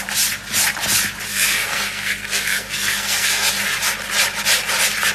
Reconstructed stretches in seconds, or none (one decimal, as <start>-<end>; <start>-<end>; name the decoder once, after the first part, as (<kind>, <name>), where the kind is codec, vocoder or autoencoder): 1.3-3.5 (codec, SNAC)

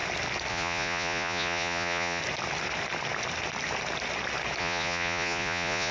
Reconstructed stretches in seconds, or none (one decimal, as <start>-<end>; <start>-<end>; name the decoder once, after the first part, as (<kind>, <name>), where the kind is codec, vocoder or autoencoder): 0.5-2.2 (vocoder, Vocos); 4.6-5.9

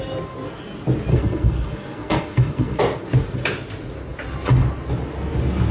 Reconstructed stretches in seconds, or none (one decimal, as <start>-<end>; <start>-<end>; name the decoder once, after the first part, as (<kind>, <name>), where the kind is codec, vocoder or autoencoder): 1.1-2.8 (codec, SNAC)

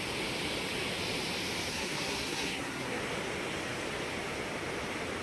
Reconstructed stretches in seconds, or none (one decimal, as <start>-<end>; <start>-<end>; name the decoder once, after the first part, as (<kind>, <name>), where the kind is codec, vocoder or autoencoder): 1.7-3.0 (codec, SNAC)

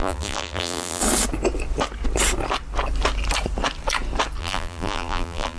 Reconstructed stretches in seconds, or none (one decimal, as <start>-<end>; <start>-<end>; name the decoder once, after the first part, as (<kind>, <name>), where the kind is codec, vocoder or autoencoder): 0.0-1.0 (vocoder, BigVGAN v2); 4.4-5.6

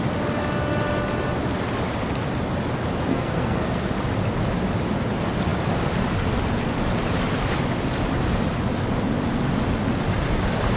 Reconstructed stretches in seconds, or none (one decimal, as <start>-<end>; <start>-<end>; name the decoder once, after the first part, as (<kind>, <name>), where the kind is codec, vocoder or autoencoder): 3.1-3.9 (codec, SNAC)

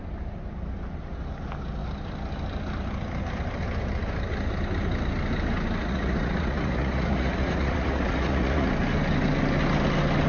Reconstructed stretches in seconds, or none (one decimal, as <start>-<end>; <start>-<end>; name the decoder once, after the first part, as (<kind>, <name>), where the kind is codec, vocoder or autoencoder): 5.8-8.7 (vocoder, Vocos)